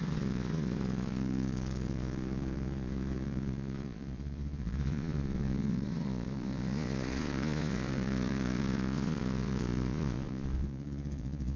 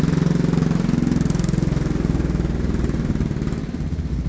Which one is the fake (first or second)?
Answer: first